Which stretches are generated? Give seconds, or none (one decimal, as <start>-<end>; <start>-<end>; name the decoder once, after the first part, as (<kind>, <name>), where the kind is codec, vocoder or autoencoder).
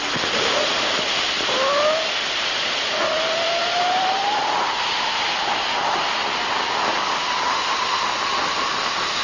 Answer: none